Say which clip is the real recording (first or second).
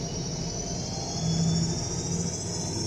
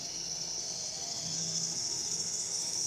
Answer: first